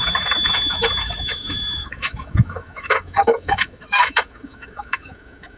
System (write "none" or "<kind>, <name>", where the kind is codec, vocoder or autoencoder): autoencoder, DAC-VAE